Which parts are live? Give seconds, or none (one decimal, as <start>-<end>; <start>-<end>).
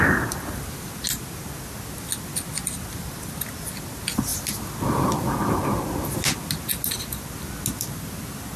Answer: 0.0-8.6